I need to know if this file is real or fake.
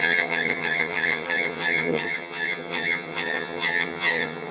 fake